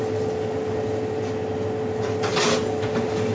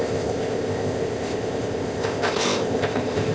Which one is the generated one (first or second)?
second